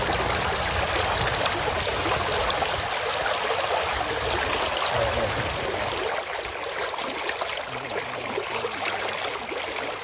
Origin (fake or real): real